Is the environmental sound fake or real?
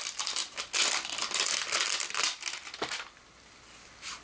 real